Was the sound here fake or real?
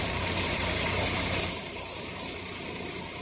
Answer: fake